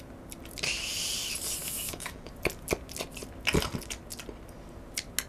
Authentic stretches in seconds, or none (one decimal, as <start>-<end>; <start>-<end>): 0.0-1.6; 2.3-5.3